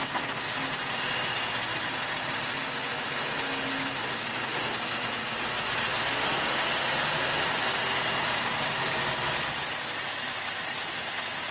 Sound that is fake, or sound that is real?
real